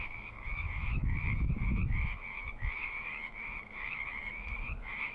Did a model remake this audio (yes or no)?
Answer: yes